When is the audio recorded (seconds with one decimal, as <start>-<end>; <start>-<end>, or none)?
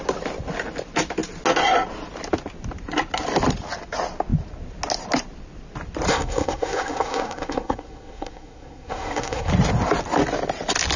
0.0-6.1; 9.5-11.0